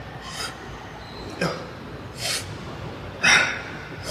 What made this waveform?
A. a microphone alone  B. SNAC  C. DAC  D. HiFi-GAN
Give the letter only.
A